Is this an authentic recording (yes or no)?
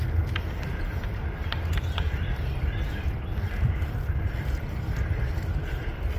yes